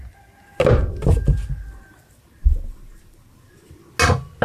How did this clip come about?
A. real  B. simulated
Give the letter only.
A